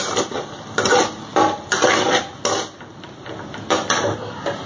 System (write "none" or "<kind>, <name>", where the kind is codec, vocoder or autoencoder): none